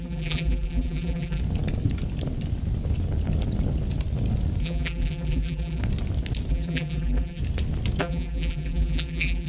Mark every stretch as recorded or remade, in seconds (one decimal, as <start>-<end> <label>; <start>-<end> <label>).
0.0-1.4 remade; 1.4-4.6 recorded; 4.6-5.8 remade; 5.8-6.5 recorded; 6.5-7.4 remade; 7.4-8.0 recorded; 8.0-9.5 remade